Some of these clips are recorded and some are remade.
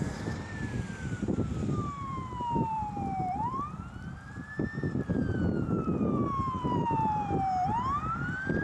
remade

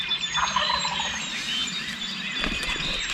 recorded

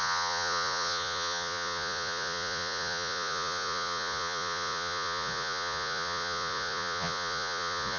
remade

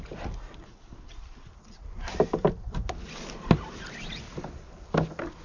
recorded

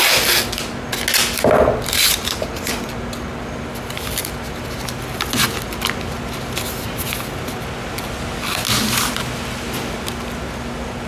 recorded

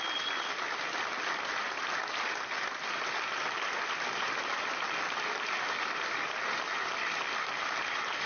recorded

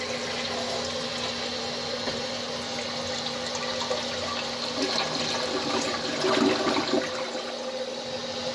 recorded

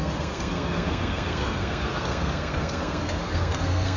remade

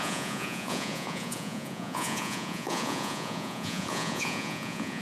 remade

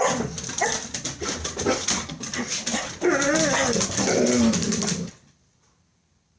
recorded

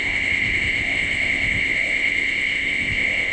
remade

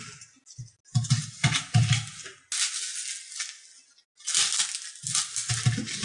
recorded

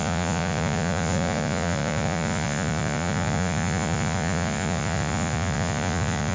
remade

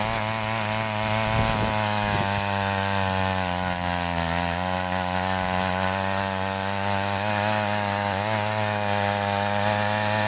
recorded